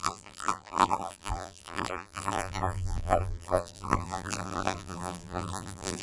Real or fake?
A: fake